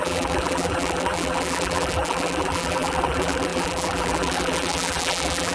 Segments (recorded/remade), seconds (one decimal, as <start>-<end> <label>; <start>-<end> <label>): 0.0-5.5 remade